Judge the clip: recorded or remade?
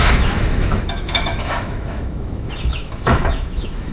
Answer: remade